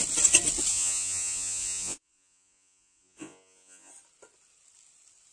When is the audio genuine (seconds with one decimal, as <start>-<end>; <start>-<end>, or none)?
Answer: 0.0-0.7; 3.9-5.3